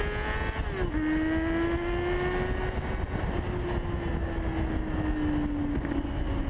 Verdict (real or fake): real